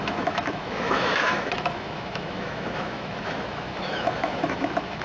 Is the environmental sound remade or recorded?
remade